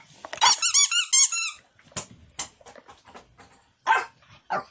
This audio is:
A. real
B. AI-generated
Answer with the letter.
A